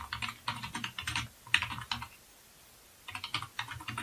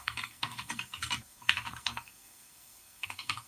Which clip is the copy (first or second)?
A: second